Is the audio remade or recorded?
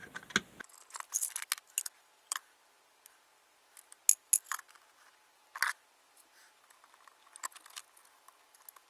recorded